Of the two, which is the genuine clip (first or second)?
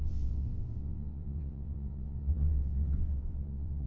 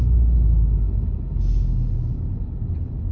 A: second